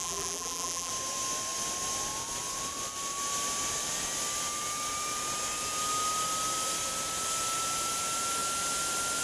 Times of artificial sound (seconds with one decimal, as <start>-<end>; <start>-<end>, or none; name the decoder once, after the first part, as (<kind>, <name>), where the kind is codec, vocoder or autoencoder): 0.0-0.9 (vocoder, BigVGAN v2)